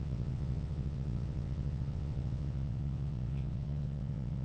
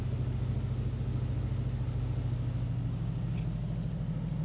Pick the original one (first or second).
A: second